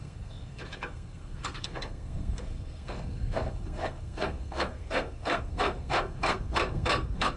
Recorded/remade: remade